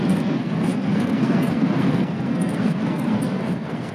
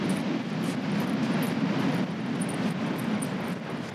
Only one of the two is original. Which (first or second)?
second